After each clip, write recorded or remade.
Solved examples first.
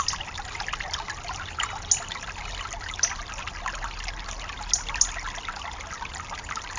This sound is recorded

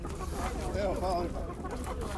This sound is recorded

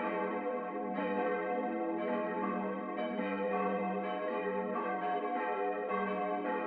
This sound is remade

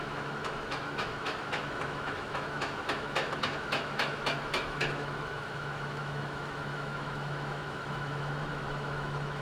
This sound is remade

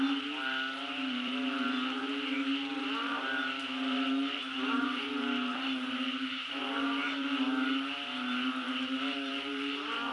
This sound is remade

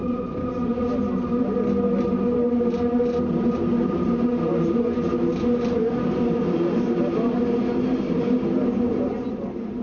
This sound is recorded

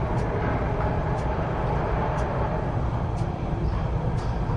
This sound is recorded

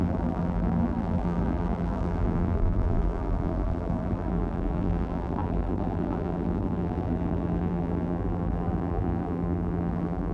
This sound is remade